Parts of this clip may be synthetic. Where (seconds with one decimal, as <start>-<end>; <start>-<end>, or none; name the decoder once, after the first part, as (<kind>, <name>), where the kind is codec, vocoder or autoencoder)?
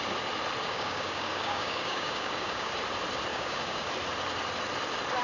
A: 0.6-2.7 (codec, DAC); 3.3-3.9